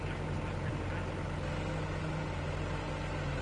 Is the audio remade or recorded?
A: recorded